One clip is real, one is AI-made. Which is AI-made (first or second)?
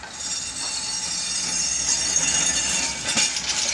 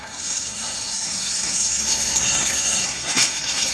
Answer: second